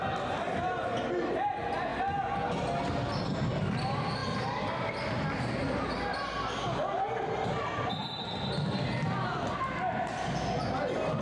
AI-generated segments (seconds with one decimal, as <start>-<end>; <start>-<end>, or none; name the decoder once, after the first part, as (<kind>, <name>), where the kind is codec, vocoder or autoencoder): none